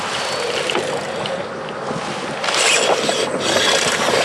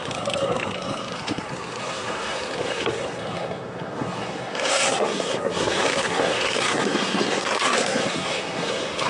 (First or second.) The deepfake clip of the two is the second